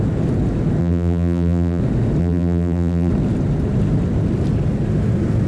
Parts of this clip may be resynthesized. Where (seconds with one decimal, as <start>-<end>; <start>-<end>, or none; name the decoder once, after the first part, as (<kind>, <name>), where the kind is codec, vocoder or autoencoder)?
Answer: 0.8-1.8 (vocoder, BigVGAN v2); 2.2-3.1